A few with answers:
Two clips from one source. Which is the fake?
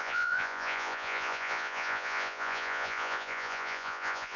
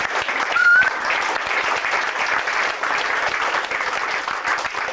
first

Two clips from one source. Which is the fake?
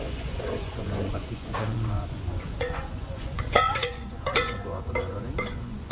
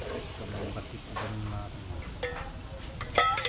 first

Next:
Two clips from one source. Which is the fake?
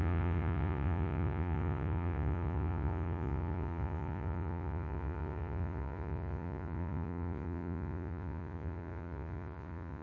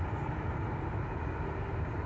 first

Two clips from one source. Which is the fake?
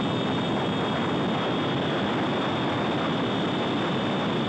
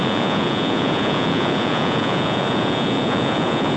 second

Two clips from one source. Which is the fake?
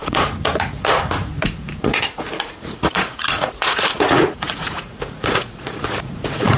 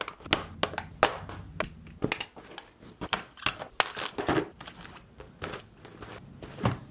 first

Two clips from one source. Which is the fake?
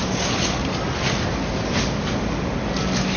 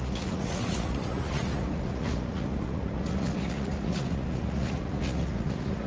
second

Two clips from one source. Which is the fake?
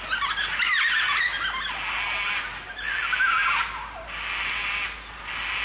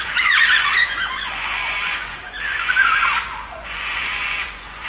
second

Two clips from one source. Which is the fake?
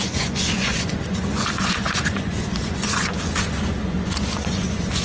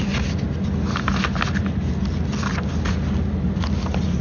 first